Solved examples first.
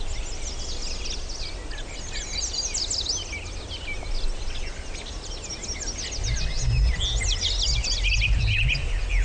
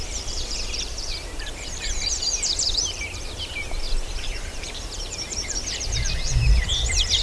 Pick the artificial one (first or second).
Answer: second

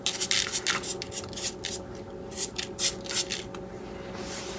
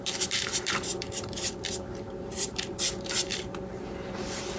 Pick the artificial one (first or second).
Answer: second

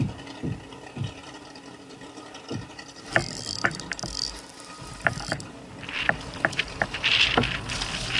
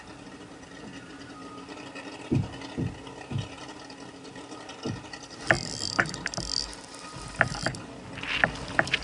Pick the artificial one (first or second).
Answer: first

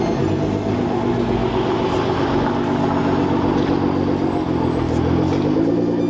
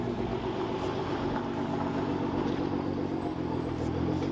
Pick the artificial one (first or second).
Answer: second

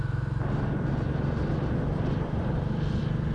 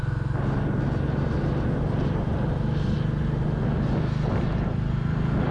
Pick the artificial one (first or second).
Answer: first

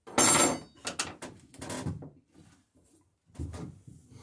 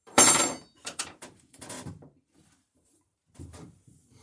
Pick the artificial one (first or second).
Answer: second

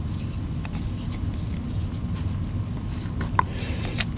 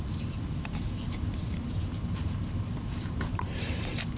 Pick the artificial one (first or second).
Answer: second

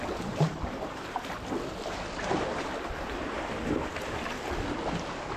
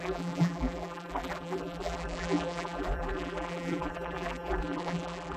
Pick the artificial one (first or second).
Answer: second